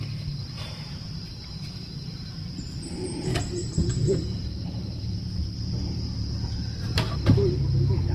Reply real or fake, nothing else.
fake